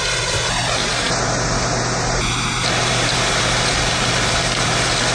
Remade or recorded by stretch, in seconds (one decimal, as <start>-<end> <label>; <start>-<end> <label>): 0.0-5.1 recorded